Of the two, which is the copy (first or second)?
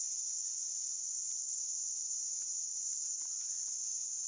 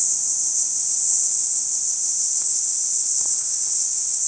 second